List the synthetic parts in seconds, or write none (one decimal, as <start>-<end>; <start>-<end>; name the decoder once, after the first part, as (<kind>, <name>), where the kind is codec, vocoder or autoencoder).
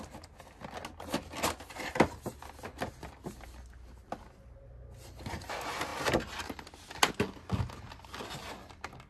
none